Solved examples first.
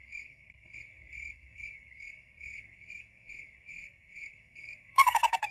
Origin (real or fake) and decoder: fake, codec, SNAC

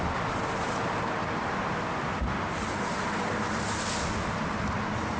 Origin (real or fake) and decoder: real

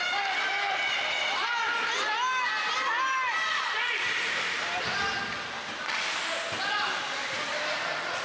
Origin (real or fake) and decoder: real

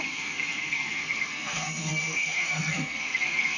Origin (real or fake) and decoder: fake, codec, SNAC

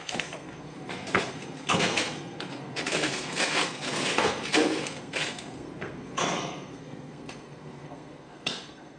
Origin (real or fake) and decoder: fake, codec, SNAC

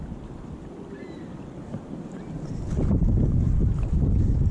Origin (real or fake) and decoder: real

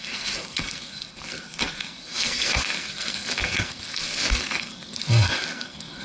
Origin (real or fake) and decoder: fake, codec, SNAC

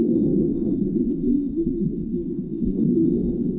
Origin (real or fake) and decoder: fake, codec, SNAC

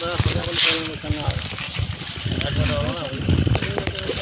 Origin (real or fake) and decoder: real